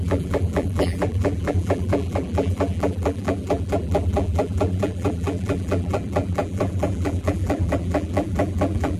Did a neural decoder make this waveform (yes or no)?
yes